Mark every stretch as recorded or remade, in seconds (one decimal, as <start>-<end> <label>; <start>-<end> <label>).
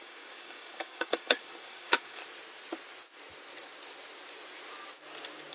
0.0-2.2 remade; 2.2-5.5 recorded